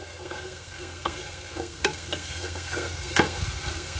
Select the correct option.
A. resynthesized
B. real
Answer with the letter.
A